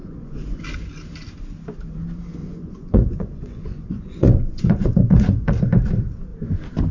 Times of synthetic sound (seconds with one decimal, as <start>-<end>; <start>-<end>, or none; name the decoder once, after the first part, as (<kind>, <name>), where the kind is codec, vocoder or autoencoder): 0.0-0.6 (vocoder, Vocos); 2.4-5.5